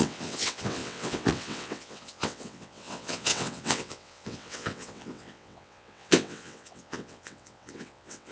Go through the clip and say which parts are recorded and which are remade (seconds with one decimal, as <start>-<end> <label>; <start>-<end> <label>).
0.0-8.3 remade